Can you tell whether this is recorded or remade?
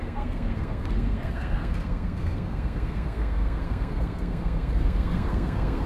remade